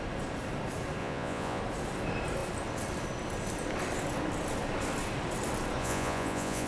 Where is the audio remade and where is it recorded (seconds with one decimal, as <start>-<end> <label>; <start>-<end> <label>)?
0.0-1.0 recorded; 1.0-1.6 remade; 1.6-5.8 recorded; 5.8-6.7 remade